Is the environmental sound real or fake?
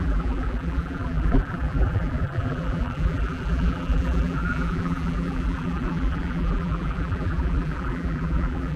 fake